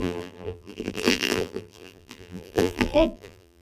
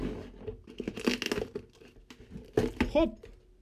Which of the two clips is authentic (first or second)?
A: second